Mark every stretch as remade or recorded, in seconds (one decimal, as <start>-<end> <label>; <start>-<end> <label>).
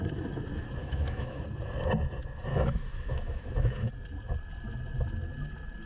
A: 0.0-0.8 recorded; 0.8-1.4 remade; 1.4-2.5 recorded; 2.5-3.9 remade; 3.9-5.9 recorded